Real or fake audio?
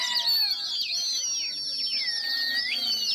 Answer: real